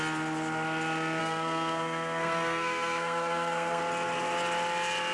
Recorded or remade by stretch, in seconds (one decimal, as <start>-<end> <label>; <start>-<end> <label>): 0.0-1.2 recorded; 1.2-3.8 remade; 3.8-5.1 recorded